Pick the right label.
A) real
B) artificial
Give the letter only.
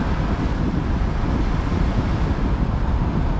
A